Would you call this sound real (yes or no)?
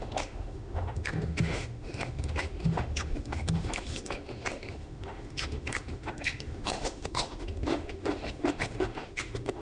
no